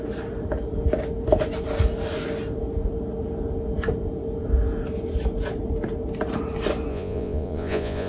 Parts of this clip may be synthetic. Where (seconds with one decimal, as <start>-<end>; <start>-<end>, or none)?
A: 6.9-8.1

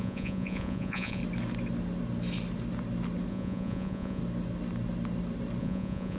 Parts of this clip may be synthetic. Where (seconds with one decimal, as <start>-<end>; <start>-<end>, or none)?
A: 0.0-1.2; 3.3-4.2; 5.6-6.2

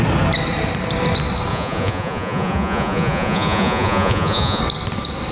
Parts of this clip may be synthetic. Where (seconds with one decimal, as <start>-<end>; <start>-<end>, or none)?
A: 1.5-4.6

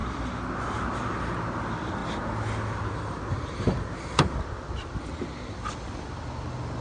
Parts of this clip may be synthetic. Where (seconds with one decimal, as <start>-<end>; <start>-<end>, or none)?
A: none